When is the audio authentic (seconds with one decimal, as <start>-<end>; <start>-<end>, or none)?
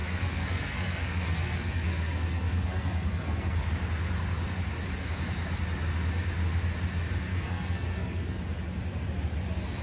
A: 3.7-7.3; 8.4-9.8